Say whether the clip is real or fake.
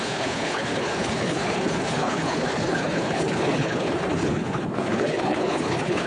fake